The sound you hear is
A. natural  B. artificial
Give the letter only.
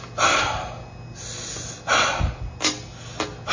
A